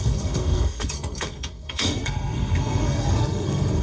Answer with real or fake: fake